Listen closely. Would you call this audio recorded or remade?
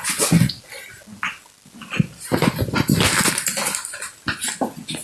recorded